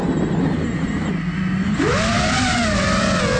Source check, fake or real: real